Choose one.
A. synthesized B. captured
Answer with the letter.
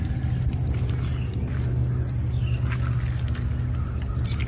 B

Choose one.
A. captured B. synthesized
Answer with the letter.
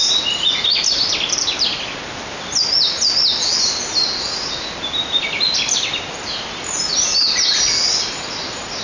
A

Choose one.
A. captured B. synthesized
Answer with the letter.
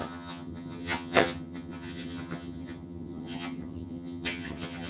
B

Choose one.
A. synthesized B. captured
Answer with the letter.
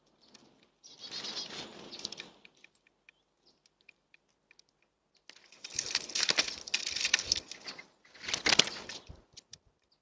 B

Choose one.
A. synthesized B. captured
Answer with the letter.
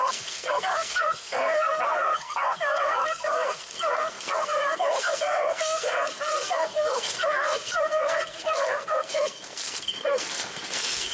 A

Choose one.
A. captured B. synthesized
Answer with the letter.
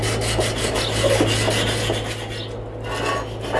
A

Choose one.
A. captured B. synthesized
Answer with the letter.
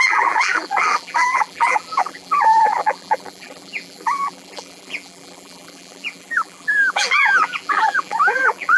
B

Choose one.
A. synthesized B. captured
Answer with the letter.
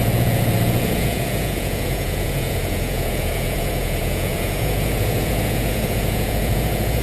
A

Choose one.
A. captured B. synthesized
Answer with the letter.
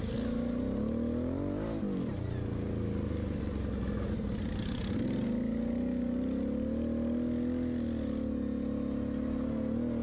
A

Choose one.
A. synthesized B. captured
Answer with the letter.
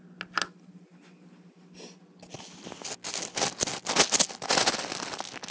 B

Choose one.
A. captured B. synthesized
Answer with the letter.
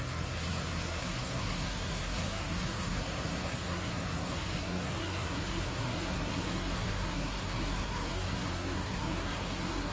B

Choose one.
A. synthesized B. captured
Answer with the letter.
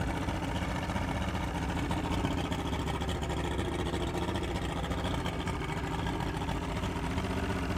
B